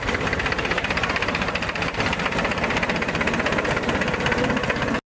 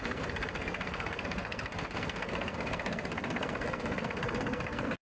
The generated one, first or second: second